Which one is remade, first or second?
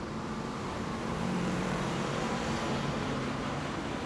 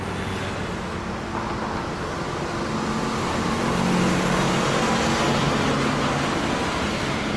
first